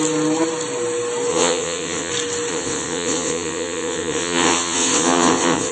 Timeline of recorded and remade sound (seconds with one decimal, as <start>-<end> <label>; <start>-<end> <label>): 0.0-1.3 recorded; 1.3-2.1 remade; 2.1-2.5 recorded; 2.5-5.7 remade